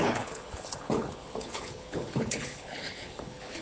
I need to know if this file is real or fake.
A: fake